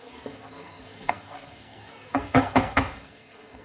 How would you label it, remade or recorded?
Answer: remade